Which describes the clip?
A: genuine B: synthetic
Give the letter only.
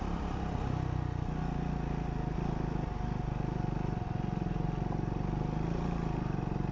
A